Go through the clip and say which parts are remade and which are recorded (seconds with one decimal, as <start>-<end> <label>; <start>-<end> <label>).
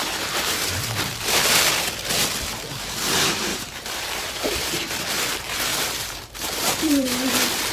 0.0-0.8 remade; 0.8-3.5 recorded; 3.5-4.8 remade; 4.8-5.7 recorded; 5.7-7.3 remade; 7.3-7.7 recorded